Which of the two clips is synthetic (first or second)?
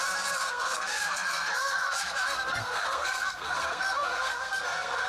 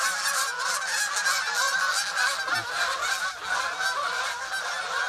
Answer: first